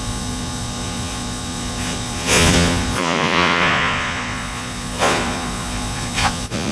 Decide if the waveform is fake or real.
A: fake